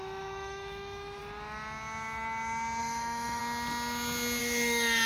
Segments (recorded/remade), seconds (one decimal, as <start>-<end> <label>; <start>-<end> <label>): 0.0-1.2 remade; 1.2-2.8 recorded; 2.8-3.4 remade; 3.4-4.4 recorded; 4.4-5.1 remade